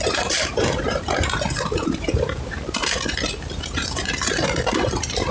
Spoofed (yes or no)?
yes